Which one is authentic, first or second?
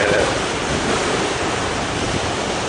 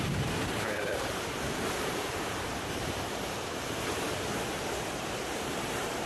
first